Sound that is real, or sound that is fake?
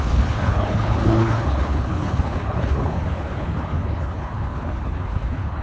fake